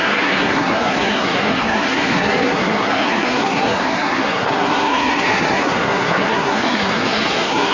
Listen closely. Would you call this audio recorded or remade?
remade